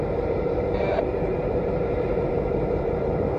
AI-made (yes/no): yes